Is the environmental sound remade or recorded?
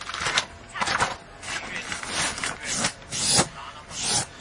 recorded